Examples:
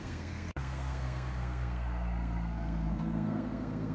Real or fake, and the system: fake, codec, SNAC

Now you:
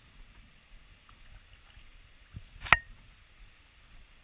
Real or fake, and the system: real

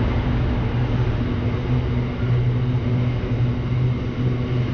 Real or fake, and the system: real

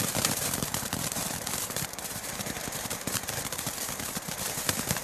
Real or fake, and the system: fake, vocoder, BigVGAN v2